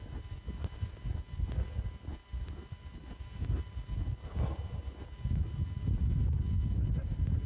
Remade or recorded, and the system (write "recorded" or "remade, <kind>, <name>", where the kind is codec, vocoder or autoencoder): recorded